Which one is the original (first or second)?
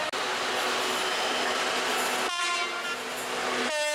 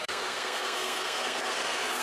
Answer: first